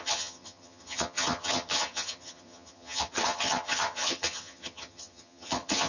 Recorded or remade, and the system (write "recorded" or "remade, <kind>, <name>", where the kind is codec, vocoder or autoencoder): remade, vocoder, HiFi-GAN